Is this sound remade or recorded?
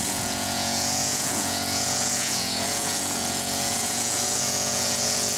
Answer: remade